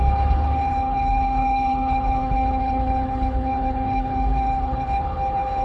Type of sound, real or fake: fake